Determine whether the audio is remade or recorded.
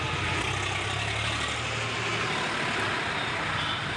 recorded